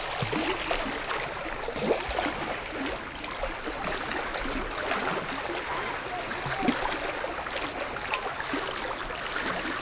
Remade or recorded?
recorded